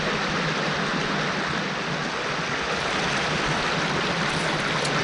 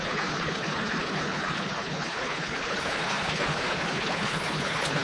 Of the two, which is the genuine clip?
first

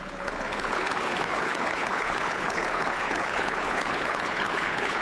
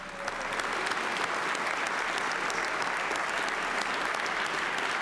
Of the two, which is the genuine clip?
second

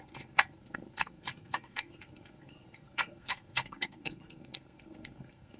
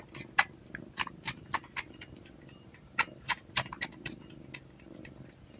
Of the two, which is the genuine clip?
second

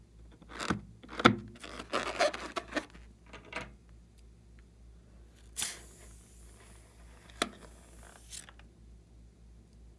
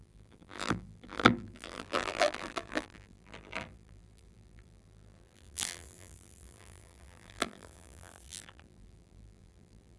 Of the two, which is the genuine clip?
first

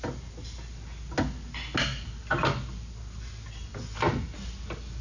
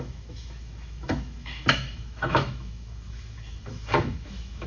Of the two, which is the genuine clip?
first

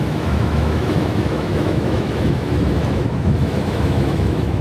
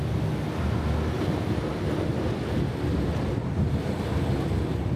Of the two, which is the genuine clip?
second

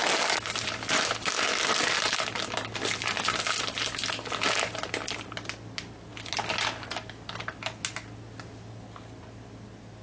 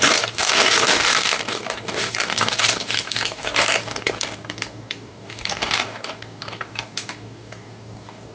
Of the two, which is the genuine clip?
first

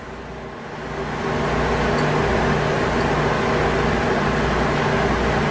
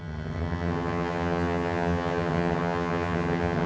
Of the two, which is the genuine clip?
first